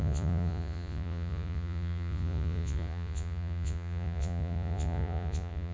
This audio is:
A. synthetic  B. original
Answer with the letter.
A